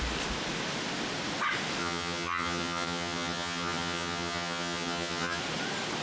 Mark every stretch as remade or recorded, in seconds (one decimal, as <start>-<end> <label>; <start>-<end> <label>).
0.0-1.8 recorded; 1.8-5.4 remade; 5.4-6.0 recorded